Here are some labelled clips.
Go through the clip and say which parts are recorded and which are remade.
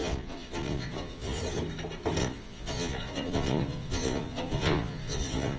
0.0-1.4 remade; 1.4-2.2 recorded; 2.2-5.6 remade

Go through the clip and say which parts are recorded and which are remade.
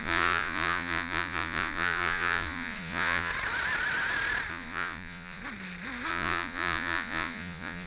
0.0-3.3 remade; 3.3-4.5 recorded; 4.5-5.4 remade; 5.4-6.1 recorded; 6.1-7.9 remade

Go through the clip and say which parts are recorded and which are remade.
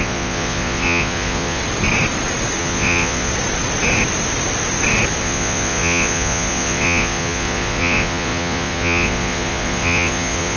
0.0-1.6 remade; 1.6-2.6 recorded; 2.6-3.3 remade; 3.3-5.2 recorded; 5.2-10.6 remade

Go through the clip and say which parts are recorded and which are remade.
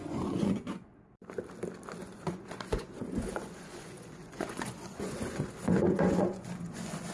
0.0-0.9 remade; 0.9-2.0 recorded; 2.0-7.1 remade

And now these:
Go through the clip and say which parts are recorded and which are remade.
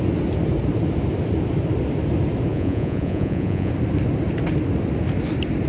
0.0-2.5 recorded; 2.5-3.7 remade; 3.7-5.7 recorded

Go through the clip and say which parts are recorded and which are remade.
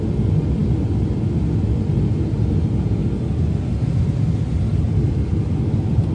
0.0-6.1 recorded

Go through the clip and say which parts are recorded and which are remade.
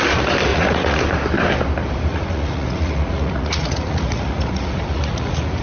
0.0-0.5 recorded; 0.5-1.0 remade; 1.0-2.1 recorded; 2.1-5.6 remade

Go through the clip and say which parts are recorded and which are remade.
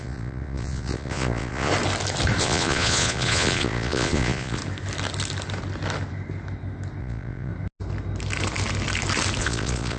0.0-1.7 remade; 1.7-2.4 recorded; 2.4-4.6 remade; 4.6-7.0 recorded; 7.0-7.5 remade; 7.5-9.4 recorded; 9.4-10.0 remade